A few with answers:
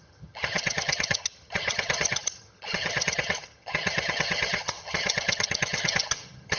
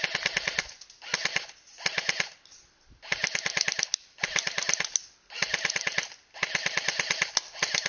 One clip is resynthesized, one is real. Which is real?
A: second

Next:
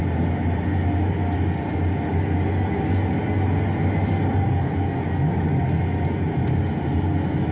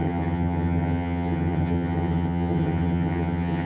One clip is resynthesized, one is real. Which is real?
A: first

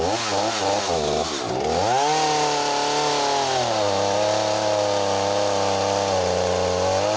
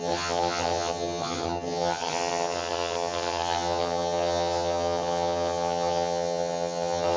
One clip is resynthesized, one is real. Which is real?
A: first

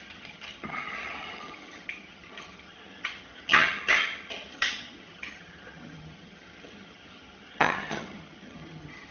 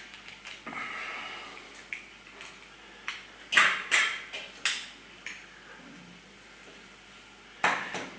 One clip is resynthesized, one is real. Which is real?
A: second